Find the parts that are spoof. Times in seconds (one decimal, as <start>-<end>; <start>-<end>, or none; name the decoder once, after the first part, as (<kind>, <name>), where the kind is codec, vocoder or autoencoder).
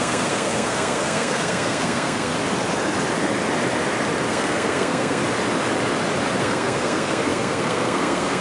0.0-2.3 (codec, SNAC); 4.3-5.2; 6.4-8.4